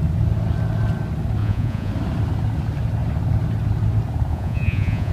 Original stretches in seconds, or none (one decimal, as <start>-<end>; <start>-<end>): 0.0-1.4; 1.9-4.3